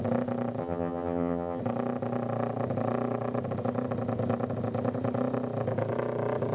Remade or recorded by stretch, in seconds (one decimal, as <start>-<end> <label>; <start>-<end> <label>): 0.0-0.6 recorded; 0.6-1.6 remade; 1.6-6.5 recorded